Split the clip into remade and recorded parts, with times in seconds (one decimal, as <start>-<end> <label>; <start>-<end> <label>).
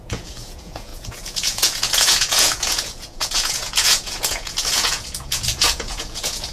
0.0-6.5 remade